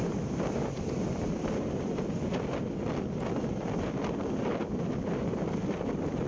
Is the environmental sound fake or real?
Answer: real